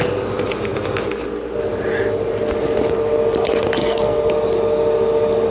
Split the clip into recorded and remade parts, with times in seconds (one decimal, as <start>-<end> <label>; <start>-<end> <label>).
0.0-3.8 recorded; 3.8-4.3 remade; 4.3-5.5 recorded